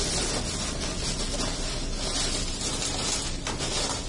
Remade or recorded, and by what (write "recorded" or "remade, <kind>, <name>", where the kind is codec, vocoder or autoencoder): recorded